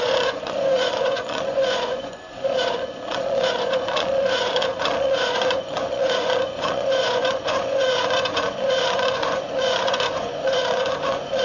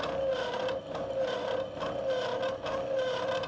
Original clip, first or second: second